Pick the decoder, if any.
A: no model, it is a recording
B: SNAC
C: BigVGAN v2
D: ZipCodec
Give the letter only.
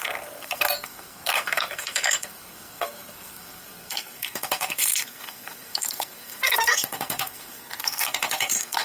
B